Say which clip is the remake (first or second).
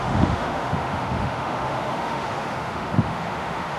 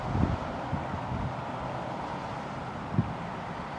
first